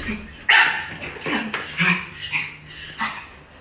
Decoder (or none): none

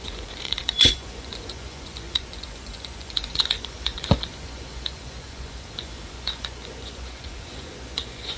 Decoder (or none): vocoder, Vocos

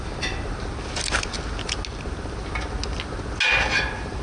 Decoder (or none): none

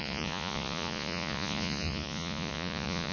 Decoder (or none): vocoder, Vocos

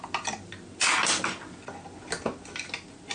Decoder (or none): none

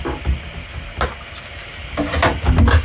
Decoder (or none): none